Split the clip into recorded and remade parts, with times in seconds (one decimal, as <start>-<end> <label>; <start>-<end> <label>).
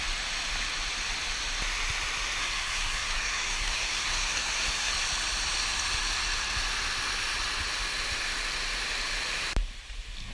0.0-2.4 recorded; 2.4-4.9 remade; 4.9-10.3 recorded